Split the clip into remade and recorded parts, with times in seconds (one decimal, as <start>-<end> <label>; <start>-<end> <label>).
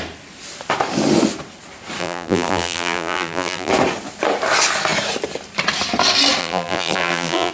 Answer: 0.0-2.0 recorded; 2.0-3.7 remade; 3.7-6.4 recorded; 6.4-7.5 remade